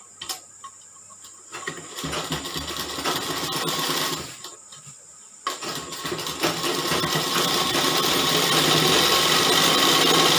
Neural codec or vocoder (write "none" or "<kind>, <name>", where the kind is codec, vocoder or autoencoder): none